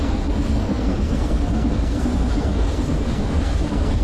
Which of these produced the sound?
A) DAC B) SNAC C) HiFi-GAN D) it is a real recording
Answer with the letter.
B